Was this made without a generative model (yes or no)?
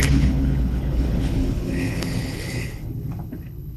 no